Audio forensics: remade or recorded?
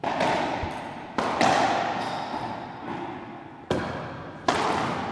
recorded